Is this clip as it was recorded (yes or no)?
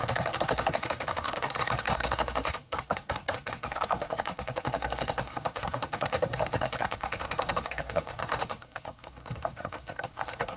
no